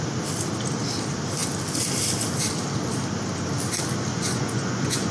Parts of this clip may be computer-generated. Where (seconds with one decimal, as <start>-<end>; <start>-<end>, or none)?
4.1-5.1